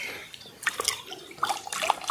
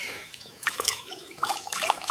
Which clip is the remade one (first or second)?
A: second